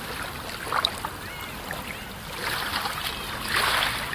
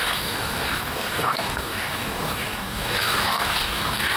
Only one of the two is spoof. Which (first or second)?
second